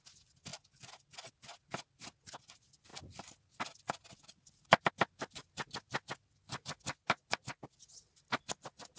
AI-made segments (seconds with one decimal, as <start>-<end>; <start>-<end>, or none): 0.5-1.3